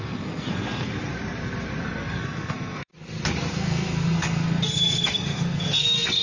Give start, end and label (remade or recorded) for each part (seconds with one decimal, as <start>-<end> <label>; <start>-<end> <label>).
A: 0.0-0.9 remade; 0.9-1.8 recorded; 1.8-2.9 remade; 2.9-3.5 recorded; 3.5-6.2 remade